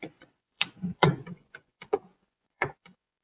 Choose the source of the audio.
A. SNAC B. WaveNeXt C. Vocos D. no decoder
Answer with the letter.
C